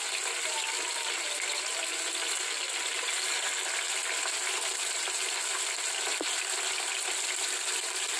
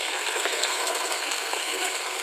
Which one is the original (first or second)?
first